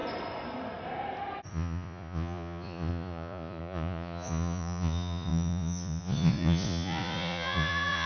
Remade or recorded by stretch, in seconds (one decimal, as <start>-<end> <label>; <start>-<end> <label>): 0.0-1.5 recorded; 1.5-8.1 remade